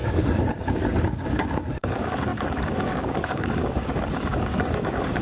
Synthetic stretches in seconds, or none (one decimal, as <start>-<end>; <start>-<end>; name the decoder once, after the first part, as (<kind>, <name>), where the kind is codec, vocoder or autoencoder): 0.0-5.2 (codec, DAC)